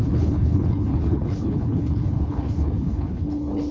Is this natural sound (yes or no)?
no